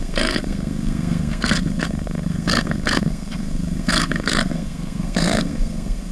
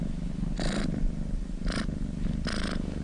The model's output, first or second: first